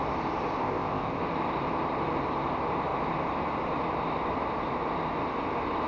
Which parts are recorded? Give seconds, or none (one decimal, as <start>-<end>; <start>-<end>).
0.0-0.6; 1.2-5.9